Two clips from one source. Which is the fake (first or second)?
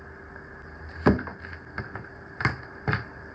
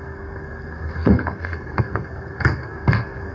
second